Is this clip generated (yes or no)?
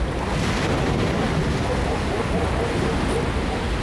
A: no